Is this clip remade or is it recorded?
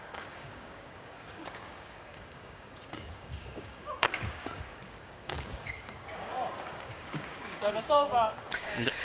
remade